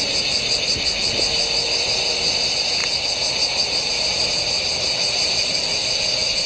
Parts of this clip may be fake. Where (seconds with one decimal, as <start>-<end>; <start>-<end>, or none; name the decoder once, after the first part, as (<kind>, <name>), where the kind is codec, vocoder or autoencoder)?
none